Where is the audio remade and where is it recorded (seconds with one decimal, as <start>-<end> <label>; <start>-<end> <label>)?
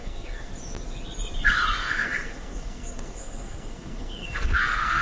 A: 0.0-0.5 remade; 0.5-1.8 recorded; 1.8-5.0 remade